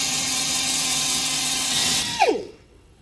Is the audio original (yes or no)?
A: no